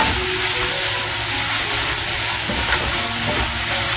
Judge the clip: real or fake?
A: real